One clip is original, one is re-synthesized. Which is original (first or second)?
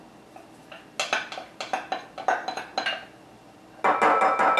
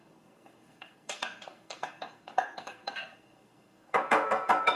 first